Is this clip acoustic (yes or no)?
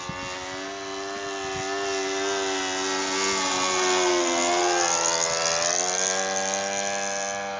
yes